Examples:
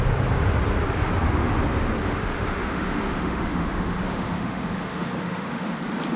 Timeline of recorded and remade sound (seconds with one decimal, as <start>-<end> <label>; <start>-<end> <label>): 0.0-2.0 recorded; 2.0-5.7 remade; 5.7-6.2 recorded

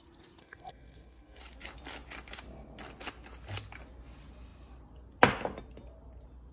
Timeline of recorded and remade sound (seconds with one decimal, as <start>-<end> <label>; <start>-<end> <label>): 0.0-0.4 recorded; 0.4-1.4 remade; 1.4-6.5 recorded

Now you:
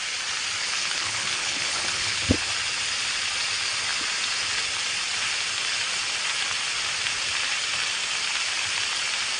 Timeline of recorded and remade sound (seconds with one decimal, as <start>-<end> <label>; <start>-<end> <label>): 0.0-0.6 recorded; 0.6-2.3 remade; 2.3-9.4 recorded

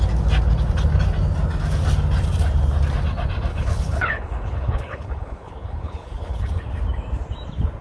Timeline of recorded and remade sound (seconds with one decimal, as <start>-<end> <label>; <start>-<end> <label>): 0.0-3.5 recorded; 3.5-6.5 remade; 6.5-7.8 recorded

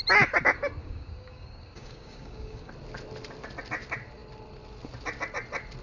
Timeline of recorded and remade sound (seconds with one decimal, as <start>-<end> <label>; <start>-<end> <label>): 0.0-0.8 recorded; 0.8-2.7 remade; 2.7-5.8 recorded